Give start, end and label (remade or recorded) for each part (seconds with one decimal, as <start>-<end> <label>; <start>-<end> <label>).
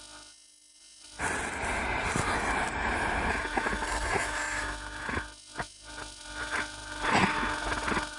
0.0-1.2 remade; 1.2-3.3 recorded; 3.3-8.2 remade